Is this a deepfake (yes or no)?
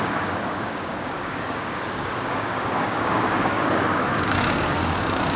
yes